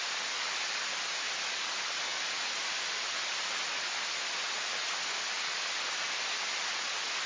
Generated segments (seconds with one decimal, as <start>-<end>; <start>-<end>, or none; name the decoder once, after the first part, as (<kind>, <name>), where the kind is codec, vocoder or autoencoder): none